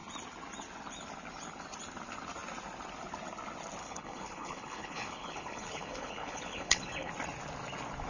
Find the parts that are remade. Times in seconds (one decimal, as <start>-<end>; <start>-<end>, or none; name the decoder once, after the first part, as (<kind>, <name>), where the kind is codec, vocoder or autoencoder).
3.8-7.1 (codec, HILCodec)